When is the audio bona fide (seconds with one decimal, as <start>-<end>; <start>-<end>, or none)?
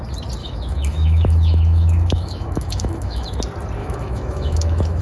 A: 0.0-0.4; 3.4-3.8